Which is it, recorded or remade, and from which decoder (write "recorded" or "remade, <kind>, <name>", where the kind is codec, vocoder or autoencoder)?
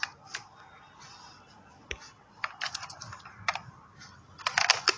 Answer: recorded